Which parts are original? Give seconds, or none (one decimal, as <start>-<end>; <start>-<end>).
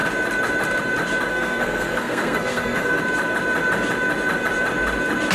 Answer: 0.0-1.3; 3.0-5.3